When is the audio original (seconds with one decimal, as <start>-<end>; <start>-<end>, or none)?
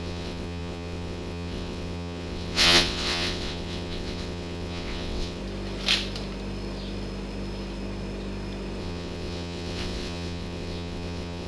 5.4-8.8